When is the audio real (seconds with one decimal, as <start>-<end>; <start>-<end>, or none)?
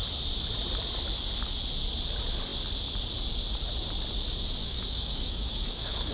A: 0.0-4.6